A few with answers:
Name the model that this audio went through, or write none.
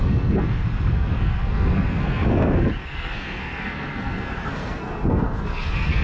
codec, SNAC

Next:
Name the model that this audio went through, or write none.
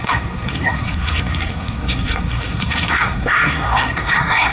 codec, SNAC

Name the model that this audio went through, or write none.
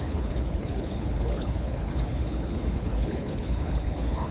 codec, HILCodec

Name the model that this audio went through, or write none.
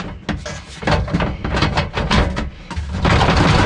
none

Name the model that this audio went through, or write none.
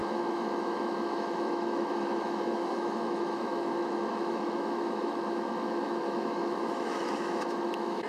autoencoder, DAC-VAE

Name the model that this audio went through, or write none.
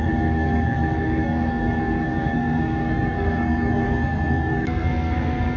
codec, SNAC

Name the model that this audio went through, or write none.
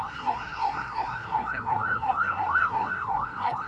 codec, SNAC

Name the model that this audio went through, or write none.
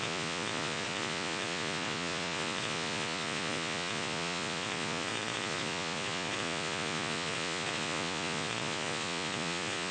vocoder, Vocos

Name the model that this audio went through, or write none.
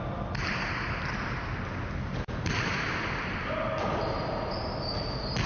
none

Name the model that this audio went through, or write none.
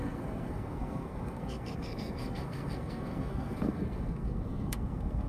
codec, SNAC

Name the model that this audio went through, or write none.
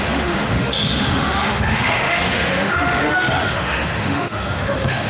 autoencoder, DAC-VAE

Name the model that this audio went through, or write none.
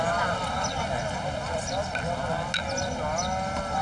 none